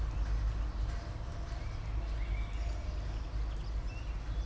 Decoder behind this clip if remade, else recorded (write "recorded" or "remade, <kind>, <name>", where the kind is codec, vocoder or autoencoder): recorded